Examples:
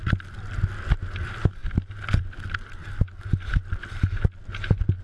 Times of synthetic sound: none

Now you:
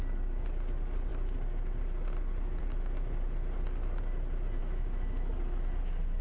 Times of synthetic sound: 4.6-5.3 (autoencoder, DAC-VAE)

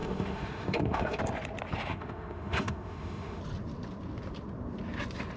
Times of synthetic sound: 0.0-1.2 (autoencoder, DAC-VAE); 1.9-3.4

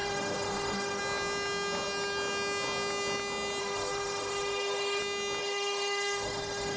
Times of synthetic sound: 0.0-1.0 (autoencoder, DAC-VAE); 3.6-5.0; 5.4-6.8

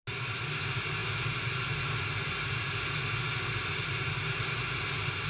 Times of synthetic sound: none

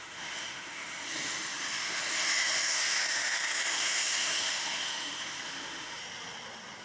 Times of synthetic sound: 0.0-6.0 (autoencoder, DAC-VAE)

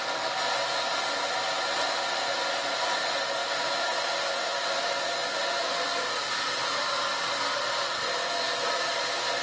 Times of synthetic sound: none

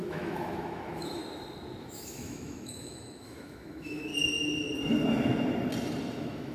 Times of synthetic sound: 0.0-1.2 (autoencoder, DAC-VAE); 1.8-4.1; 6.1-6.5